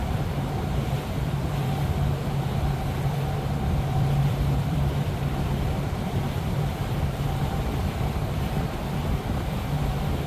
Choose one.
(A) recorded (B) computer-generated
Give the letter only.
B